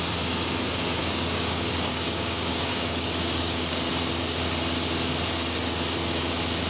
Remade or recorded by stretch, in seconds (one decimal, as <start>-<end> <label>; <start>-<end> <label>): 0.0-1.0 recorded; 1.0-3.9 remade; 3.9-6.7 recorded